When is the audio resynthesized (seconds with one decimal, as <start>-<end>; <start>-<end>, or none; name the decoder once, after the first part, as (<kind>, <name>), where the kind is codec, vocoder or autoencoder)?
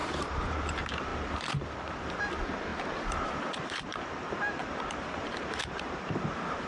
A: 0.0-6.7 (vocoder, BigVGAN v2)